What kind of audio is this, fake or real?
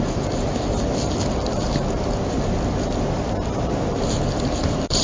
real